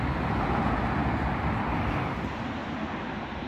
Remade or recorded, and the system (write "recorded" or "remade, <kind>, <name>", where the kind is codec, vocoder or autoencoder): recorded